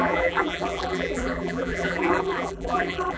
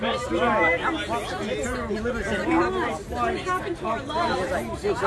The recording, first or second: second